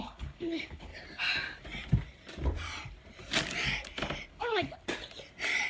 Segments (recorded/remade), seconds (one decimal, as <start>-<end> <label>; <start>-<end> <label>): 0.0-0.9 remade; 0.9-4.3 recorded; 4.3-4.8 remade; 4.8-5.7 recorded